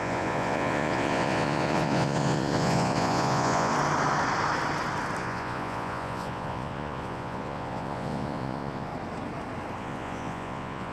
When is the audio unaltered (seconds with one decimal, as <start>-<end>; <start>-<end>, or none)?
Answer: 3.7-5.2; 8.9-9.8